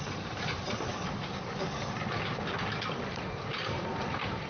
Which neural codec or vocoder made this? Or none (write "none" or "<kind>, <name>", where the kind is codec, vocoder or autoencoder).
none